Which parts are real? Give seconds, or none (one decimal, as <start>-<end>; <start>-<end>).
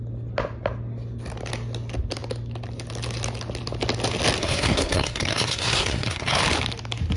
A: 0.0-4.4; 6.4-7.2